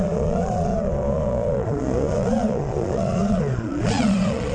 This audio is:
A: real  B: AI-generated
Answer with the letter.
B